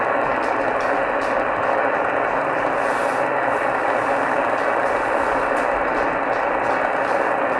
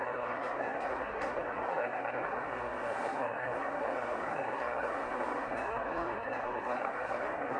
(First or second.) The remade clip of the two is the second